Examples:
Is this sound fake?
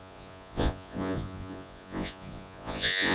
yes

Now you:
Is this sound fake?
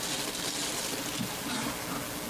no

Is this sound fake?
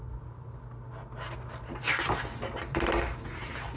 no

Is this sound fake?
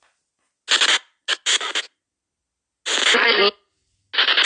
no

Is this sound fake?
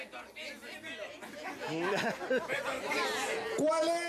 no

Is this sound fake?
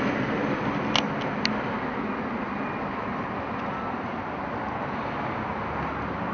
no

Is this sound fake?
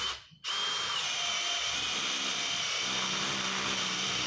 no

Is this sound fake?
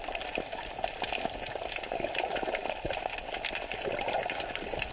no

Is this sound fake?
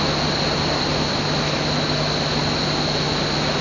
no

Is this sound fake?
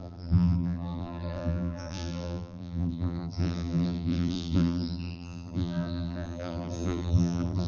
yes